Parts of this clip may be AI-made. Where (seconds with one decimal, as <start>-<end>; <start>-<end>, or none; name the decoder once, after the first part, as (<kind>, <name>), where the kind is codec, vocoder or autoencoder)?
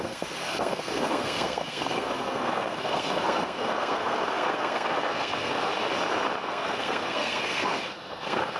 0.0-5.7 (codec, SNAC); 6.4-8.6